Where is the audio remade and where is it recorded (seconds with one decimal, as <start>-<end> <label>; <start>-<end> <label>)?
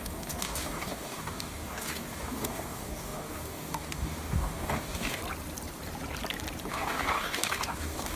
0.0-5.2 remade; 5.2-6.7 recorded; 6.7-8.2 remade